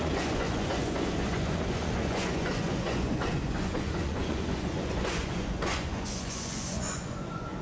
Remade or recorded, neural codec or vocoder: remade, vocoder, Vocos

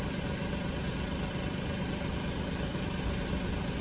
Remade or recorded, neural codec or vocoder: recorded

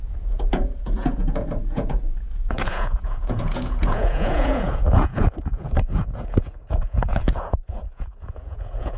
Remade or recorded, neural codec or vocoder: remade, vocoder, Vocos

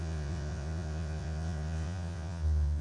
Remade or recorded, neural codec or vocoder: remade, vocoder, Vocos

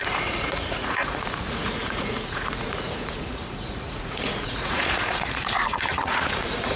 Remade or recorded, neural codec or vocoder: remade, vocoder, Vocos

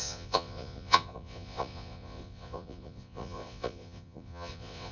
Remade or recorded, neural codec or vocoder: remade, vocoder, Vocos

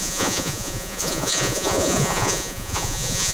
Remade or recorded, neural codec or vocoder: remade, vocoder, Vocos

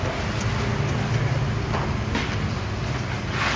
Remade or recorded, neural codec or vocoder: recorded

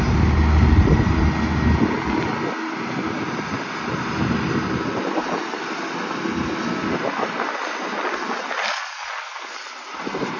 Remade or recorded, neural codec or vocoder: recorded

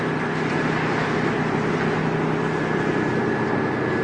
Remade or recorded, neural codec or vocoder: recorded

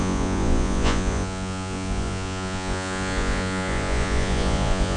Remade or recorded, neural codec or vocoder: remade, vocoder, Vocos